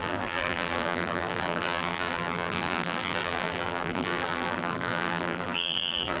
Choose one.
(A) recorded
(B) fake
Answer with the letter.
B